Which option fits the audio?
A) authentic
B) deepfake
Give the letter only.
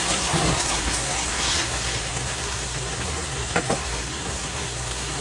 B